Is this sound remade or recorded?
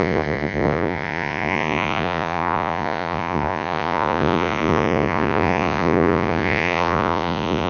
remade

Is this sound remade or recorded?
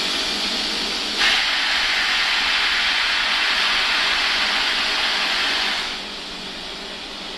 remade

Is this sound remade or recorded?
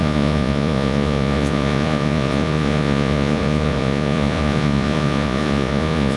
remade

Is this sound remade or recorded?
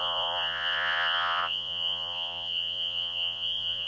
remade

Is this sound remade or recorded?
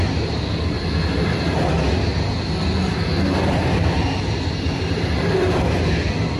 recorded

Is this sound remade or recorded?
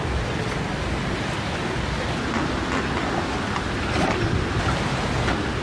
recorded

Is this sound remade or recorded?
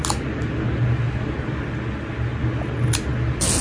recorded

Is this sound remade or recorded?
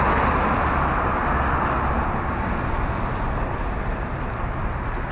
recorded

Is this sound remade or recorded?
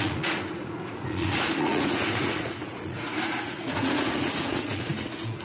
remade